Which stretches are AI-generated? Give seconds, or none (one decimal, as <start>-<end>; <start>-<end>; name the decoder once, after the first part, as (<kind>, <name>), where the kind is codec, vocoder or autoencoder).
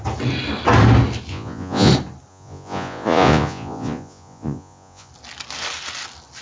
1.3-1.9 (vocoder, Vocos); 2.3-5.1